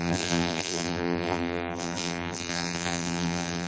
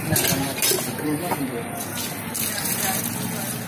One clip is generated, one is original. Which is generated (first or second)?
first